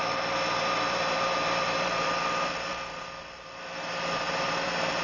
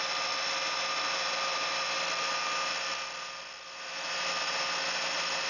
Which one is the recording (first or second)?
second